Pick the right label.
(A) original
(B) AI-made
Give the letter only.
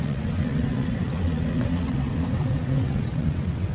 B